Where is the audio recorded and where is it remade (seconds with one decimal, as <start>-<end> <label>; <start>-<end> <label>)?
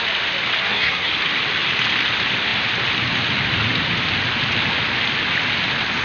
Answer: 0.0-0.6 recorded; 0.6-1.1 remade; 1.1-6.0 recorded